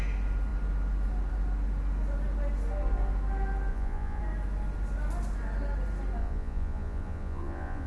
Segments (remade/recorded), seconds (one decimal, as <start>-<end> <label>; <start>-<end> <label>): 0.0-3.7 recorded; 3.7-4.2 remade; 4.2-6.2 recorded; 6.2-7.9 remade